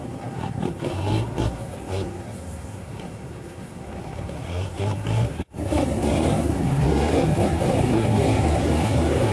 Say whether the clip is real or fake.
fake